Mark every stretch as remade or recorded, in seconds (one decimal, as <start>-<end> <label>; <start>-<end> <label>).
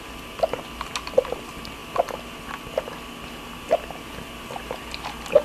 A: 0.0-5.4 recorded